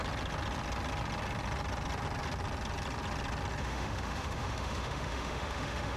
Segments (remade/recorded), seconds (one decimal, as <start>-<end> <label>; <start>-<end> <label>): 0.0-3.6 recorded; 3.6-6.0 remade